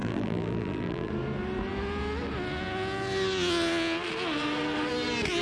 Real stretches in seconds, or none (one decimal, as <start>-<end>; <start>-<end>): 1.1-5.4